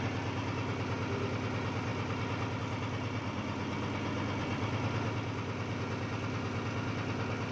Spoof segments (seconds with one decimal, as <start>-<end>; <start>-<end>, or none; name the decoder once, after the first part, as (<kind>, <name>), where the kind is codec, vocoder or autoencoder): none